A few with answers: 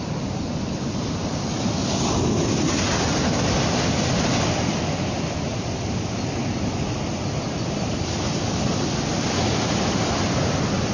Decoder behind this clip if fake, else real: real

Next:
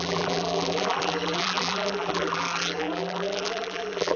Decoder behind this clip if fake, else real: fake, vocoder, BigVGAN v2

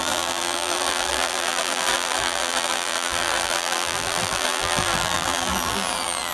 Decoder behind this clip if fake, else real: fake, vocoder, BigVGAN v2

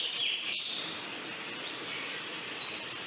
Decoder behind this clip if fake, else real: fake, vocoder, BigVGAN v2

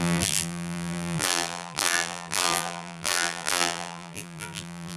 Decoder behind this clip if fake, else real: fake, vocoder, BigVGAN v2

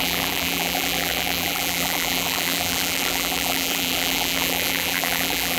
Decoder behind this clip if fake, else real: fake, vocoder, BigVGAN v2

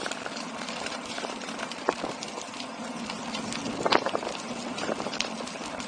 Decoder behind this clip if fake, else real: real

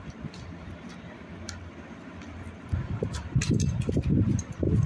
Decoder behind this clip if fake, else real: fake, vocoder, BigVGAN v2